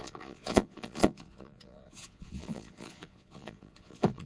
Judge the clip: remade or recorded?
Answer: remade